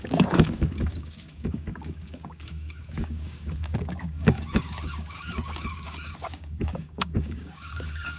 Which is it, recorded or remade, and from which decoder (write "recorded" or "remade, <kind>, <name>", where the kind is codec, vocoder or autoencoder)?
remade, codec, DAC